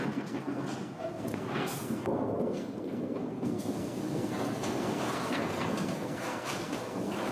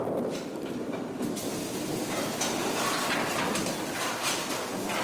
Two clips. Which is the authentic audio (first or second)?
second